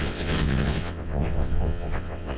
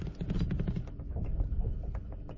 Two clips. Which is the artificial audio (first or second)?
first